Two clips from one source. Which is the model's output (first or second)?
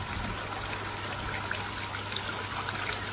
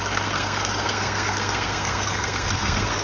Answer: second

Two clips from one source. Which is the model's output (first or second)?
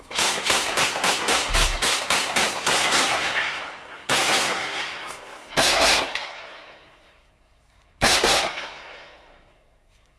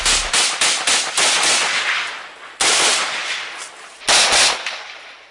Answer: first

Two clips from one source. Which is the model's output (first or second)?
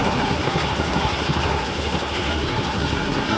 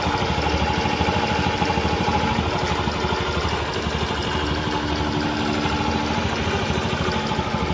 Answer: first